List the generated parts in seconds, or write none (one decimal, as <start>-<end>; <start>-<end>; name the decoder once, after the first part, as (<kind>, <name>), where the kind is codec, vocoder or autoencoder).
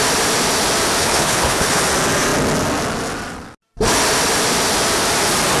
1.0-1.8 (codec, HILCodec)